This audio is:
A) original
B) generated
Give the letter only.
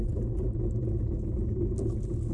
A